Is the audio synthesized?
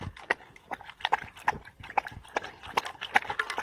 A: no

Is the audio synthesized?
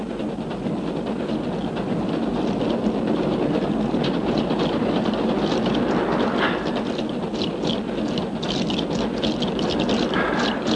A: no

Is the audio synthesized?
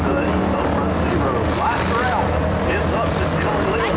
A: no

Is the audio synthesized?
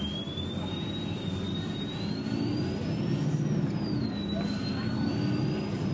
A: no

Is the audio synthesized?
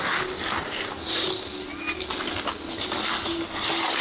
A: no